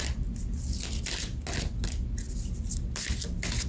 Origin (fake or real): real